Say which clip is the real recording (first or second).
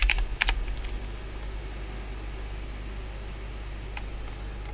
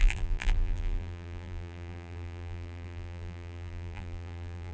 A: first